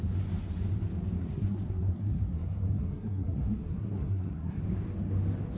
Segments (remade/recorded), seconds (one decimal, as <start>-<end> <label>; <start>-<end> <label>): 0.0-1.2 recorded; 1.2-4.6 remade; 4.6-5.6 recorded